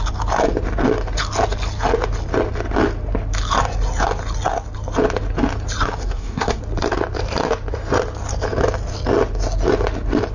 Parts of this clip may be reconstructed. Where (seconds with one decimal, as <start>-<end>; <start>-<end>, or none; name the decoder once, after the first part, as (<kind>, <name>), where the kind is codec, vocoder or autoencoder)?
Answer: 6.0-6.6 (codec, SNAC)